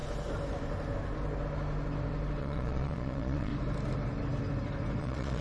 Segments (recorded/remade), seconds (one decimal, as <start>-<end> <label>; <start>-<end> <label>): 0.0-2.4 recorded; 2.4-3.5 remade; 3.5-5.0 recorded; 5.0-5.4 remade